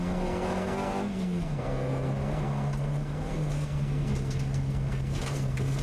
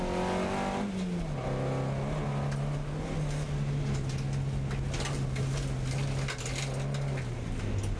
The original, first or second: second